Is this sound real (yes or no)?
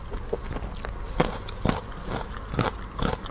yes